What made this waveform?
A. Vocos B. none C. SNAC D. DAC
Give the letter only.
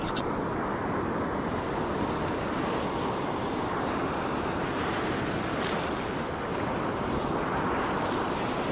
B